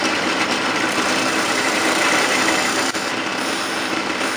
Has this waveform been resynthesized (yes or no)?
yes